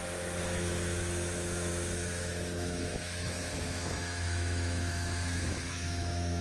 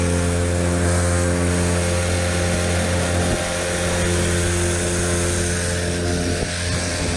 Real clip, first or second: second